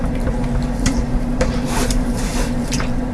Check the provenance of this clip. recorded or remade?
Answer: remade